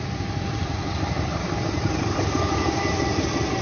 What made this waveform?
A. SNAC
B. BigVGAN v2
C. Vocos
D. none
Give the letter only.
B